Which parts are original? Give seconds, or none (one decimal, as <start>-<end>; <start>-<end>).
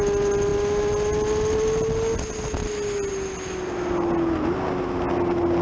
0.0-5.6